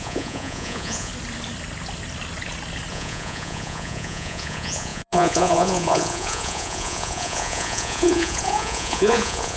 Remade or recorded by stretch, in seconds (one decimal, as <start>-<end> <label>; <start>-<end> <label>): 0.0-1.1 remade; 1.1-2.9 recorded; 2.9-9.6 remade